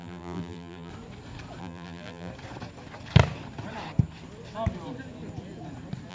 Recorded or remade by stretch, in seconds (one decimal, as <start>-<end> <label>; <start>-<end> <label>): 0.0-0.9 remade; 0.9-1.6 recorded; 1.6-2.3 remade; 2.3-6.1 recorded